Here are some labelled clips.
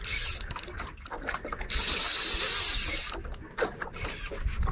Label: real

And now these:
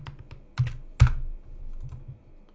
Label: real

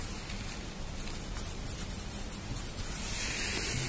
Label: real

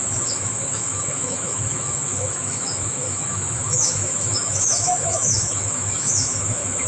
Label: fake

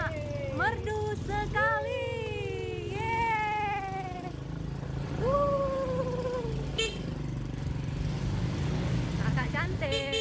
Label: real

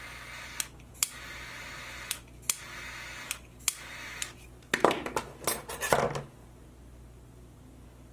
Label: real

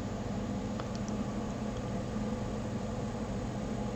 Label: real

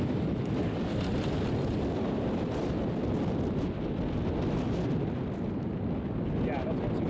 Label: real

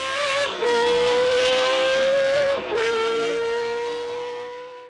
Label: fake